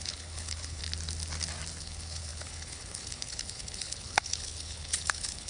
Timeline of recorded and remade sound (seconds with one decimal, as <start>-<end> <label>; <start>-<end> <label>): 0.0-0.8 remade; 0.8-1.8 recorded; 1.8-5.5 remade